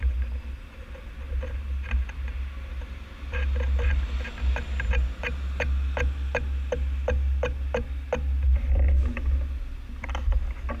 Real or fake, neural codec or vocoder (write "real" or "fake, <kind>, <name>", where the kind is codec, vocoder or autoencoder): real